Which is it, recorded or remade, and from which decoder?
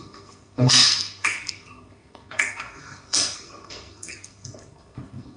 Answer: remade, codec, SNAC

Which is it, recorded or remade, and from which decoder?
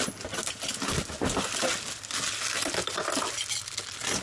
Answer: recorded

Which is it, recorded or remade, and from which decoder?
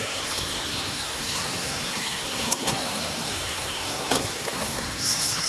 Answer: remade, codec, SNAC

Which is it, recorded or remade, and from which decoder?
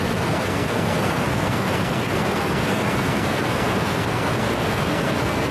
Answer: remade, codec, SNAC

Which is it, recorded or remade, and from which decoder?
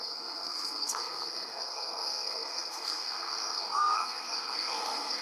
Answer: remade, codec, SNAC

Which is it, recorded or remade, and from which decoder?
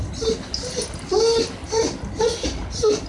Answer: recorded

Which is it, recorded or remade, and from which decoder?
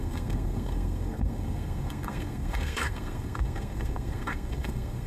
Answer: remade, codec, SNAC